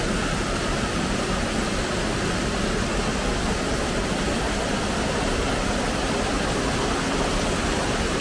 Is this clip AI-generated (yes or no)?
no